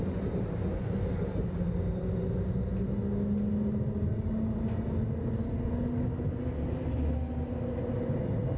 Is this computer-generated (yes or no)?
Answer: no